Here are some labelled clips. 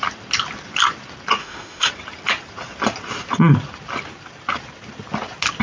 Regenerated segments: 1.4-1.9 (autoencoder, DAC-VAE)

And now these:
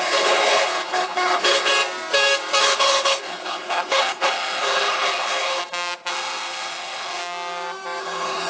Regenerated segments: 0.0-1.7 (codec, HILCodec); 2.6-5.6; 6.1-7.2; 8.0-8.5

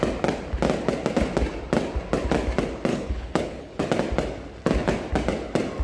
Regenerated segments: 2.9-3.8 (codec, HILCodec)

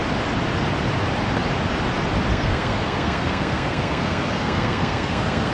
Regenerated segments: 2.3-5.5 (codec, SNAC)